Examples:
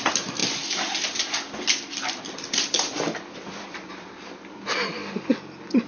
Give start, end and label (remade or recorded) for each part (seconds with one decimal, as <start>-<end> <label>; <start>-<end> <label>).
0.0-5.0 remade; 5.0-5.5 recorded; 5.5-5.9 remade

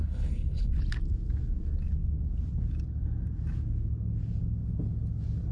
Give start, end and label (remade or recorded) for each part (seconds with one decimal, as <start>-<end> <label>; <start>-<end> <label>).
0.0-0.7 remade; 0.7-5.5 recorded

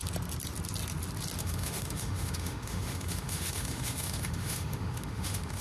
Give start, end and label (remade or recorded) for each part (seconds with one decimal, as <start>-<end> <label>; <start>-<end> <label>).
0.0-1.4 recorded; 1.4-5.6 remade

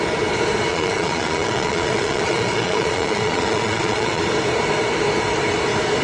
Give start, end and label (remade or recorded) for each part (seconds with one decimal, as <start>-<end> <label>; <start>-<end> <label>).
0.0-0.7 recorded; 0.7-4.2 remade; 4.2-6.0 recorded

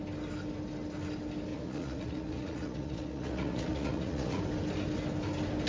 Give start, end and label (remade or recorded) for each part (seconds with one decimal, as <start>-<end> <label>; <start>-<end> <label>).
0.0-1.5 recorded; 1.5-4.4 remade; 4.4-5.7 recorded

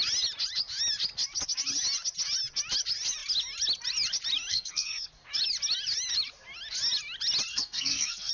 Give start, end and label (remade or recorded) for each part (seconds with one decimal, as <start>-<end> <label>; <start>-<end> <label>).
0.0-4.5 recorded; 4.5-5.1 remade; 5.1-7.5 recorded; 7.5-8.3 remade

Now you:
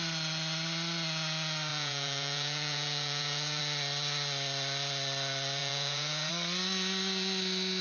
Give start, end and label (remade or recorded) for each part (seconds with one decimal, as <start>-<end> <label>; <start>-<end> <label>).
0.0-1.7 recorded; 1.7-3.6 remade; 3.6-5.6 recorded; 5.6-6.3 remade; 6.3-7.8 recorded